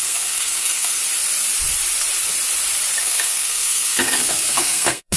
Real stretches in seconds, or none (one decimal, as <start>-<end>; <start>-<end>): 1.0-3.0